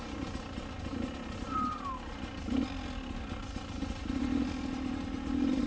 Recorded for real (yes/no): yes